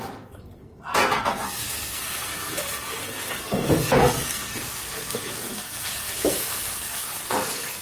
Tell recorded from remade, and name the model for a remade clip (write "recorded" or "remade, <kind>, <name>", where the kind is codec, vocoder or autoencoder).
remade, codec, SNAC